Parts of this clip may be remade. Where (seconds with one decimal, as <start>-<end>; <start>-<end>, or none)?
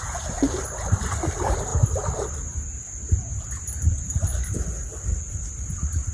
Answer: none